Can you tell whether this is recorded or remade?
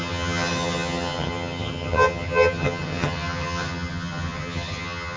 remade